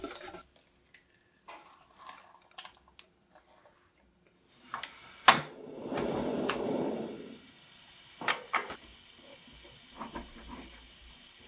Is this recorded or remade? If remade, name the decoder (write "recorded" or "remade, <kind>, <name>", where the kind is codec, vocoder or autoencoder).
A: recorded